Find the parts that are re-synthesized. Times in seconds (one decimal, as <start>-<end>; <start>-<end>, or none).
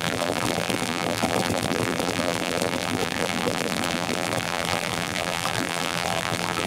0.0-6.7